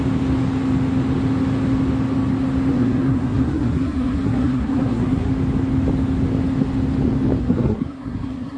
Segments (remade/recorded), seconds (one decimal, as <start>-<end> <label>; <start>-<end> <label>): 0.0-2.7 recorded; 2.7-5.3 remade; 5.3-7.4 recorded; 7.4-8.6 remade